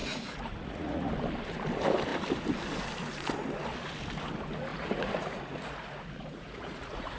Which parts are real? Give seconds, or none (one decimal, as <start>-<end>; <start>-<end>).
1.1-4.7